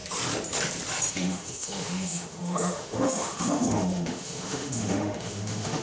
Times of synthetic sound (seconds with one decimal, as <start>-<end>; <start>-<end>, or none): 1.1-5.8